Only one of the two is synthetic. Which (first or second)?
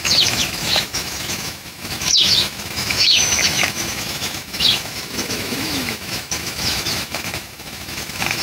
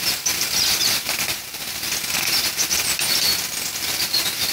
first